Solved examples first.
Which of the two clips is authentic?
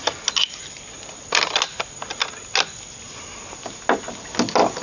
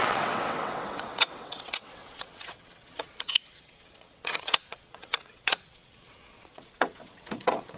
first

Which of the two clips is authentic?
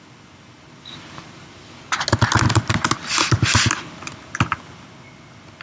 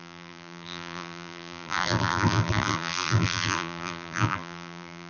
first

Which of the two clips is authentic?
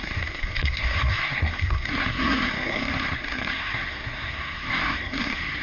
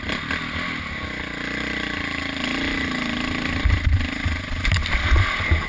second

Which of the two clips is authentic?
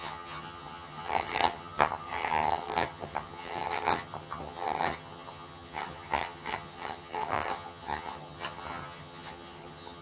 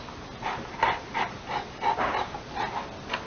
second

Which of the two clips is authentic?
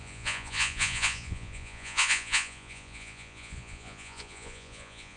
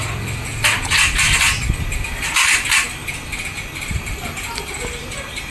second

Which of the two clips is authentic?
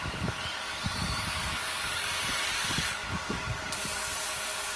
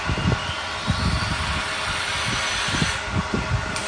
second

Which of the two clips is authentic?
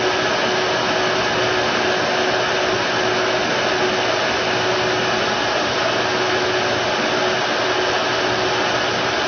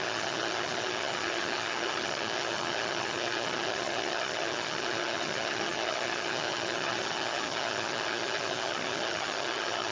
first